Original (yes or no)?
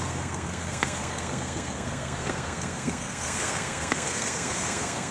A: no